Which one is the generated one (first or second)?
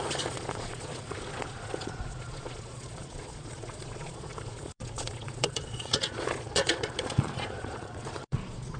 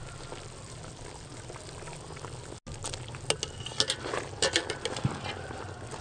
first